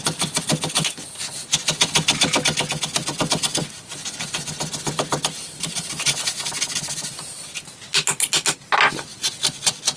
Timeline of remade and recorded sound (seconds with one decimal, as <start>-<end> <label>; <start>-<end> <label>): 0.0-10.0 recorded